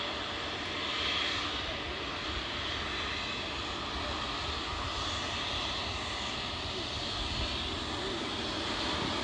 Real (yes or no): yes